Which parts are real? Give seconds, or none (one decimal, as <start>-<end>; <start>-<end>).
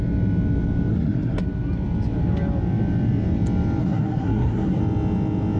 0.0-0.9; 1.4-3.8; 4.8-5.6